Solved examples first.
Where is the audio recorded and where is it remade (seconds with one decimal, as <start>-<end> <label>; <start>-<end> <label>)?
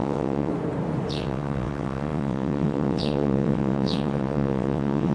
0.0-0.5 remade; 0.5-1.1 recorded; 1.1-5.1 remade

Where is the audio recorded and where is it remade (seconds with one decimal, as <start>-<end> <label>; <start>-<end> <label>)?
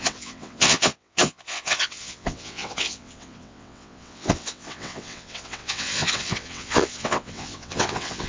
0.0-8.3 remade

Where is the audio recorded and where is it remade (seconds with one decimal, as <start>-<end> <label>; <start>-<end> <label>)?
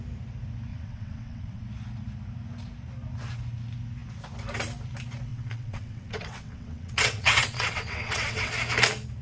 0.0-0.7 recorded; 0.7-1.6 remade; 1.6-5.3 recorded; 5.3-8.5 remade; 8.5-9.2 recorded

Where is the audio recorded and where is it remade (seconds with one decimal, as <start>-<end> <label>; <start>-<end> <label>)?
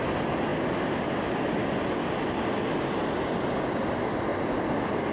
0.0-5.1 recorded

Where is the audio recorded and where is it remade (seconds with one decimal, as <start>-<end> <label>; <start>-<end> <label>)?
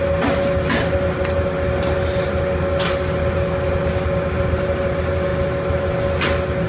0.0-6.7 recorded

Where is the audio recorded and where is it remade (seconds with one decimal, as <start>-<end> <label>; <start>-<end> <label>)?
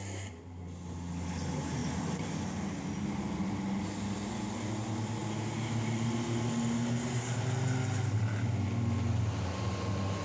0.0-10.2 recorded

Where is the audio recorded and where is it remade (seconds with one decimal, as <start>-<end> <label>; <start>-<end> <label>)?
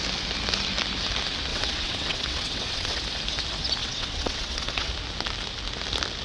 0.0-1.5 recorded; 1.5-3.0 remade; 3.0-3.8 recorded; 3.8-4.9 remade; 4.9-6.2 recorded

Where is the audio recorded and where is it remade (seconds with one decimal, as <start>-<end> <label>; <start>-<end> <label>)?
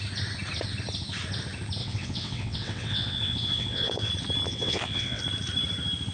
0.0-1.8 recorded; 1.8-4.1 remade; 4.1-4.5 recorded; 4.5-5.2 remade; 5.2-6.1 recorded